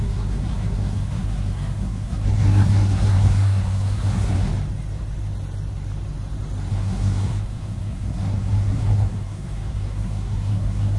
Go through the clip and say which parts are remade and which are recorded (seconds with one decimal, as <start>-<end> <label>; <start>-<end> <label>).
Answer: 0.0-4.5 remade; 4.5-6.7 recorded; 6.7-11.0 remade